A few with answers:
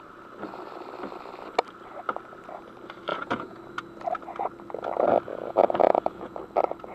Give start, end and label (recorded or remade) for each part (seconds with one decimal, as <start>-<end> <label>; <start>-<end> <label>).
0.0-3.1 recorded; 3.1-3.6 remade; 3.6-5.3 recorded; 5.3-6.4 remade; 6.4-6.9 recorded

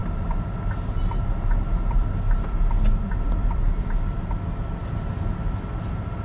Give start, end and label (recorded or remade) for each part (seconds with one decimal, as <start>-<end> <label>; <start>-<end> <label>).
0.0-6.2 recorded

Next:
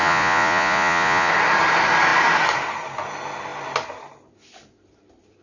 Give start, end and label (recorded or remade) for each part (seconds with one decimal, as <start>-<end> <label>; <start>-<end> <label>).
0.0-1.3 remade; 1.3-5.4 recorded

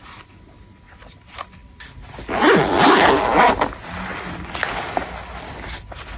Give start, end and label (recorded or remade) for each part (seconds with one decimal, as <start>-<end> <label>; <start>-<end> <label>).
0.0-6.2 recorded